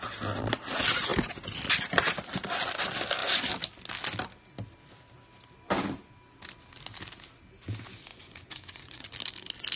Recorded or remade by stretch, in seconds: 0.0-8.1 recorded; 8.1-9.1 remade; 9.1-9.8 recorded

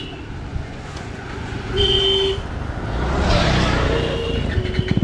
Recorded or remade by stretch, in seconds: 0.0-0.5 recorded; 0.5-2.0 remade; 2.0-5.0 recorded

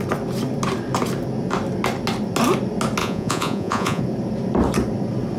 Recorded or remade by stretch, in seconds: 0.0-3.0 recorded; 3.0-4.0 remade; 4.0-5.4 recorded

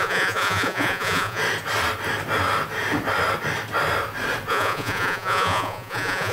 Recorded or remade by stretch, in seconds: 0.0-1.4 remade; 1.4-4.5 recorded; 4.5-6.3 remade